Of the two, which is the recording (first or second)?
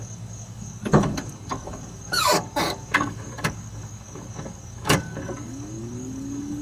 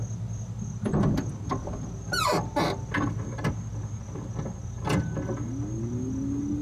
second